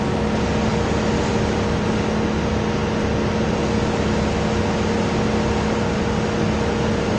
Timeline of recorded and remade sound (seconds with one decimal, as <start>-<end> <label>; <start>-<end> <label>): 0.0-7.2 recorded